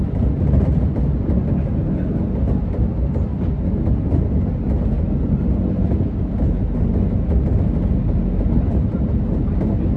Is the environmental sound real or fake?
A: real